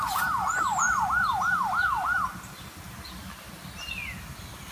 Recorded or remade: recorded